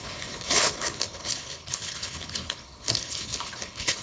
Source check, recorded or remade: remade